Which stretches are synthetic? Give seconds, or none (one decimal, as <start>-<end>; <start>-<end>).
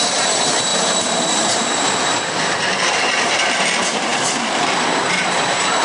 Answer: 0.0-5.8